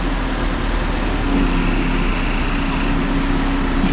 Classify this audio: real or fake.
real